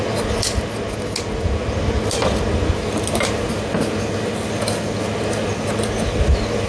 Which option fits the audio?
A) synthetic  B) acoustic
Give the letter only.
B